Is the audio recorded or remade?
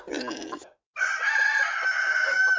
recorded